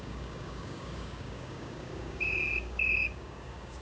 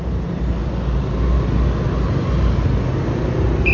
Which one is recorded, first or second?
second